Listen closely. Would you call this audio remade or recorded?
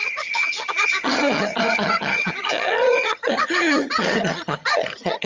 remade